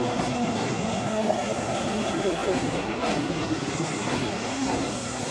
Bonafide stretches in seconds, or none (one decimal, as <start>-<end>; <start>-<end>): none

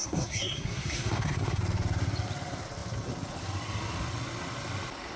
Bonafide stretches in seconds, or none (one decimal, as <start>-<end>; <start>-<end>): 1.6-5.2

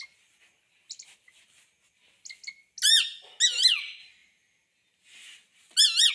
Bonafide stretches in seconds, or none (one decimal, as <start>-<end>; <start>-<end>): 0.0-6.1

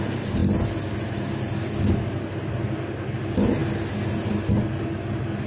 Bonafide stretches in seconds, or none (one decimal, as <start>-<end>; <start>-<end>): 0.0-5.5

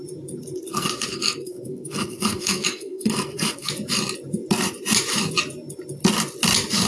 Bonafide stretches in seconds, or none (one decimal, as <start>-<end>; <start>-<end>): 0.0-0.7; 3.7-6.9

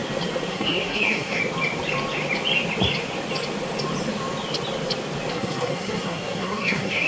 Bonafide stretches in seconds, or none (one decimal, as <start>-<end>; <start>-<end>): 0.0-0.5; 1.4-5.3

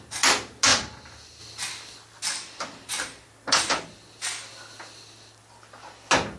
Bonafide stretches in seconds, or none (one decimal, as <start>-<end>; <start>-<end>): 0.0-6.4